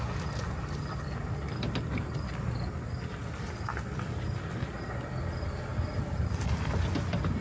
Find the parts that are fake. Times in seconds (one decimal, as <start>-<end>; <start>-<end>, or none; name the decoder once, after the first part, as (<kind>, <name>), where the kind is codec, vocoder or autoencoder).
none